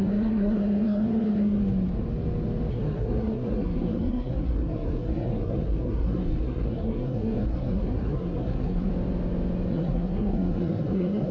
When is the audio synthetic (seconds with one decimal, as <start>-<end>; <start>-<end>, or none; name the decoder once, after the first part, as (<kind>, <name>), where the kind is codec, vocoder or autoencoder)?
0.0-1.6 (codec, SNAC); 2.7-8.9; 9.7-11.3